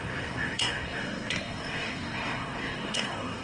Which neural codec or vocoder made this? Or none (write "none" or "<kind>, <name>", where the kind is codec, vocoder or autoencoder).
codec, SNAC